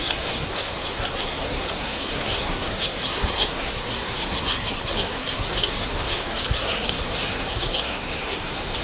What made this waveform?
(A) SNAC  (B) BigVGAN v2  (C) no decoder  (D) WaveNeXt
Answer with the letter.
A